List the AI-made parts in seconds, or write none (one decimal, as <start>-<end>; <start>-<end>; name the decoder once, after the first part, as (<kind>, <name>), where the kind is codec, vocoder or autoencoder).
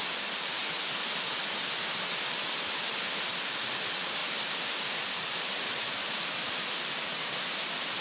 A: none